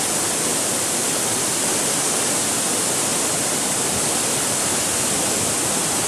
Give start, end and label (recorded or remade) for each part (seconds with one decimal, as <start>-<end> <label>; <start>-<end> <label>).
0.0-0.5 recorded; 0.5-2.1 remade; 2.1-3.1 recorded; 3.1-4.7 remade; 4.7-6.1 recorded

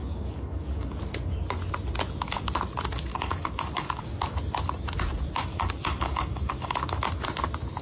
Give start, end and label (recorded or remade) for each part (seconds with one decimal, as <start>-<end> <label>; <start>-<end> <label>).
0.0-1.0 remade; 1.0-3.1 recorded; 3.1-4.0 remade; 4.0-5.5 recorded; 5.5-7.0 remade; 7.0-7.8 recorded

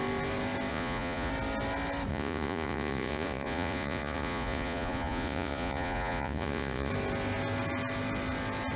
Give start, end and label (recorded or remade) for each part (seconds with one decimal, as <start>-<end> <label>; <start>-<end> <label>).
0.0-0.7 recorded; 0.7-1.3 remade; 1.3-2.1 recorded; 2.1-6.9 remade; 6.9-8.8 recorded

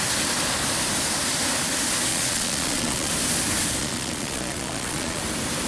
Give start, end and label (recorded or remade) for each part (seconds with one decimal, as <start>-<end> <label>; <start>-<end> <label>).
0.0-2.1 recorded; 2.1-3.1 remade; 3.1-3.8 recorded; 3.8-5.2 remade; 5.2-5.7 recorded